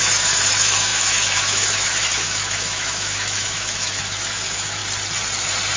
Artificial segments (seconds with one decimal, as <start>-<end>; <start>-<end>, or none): 0.0-4.8